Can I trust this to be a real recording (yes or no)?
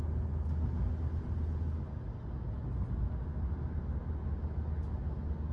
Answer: yes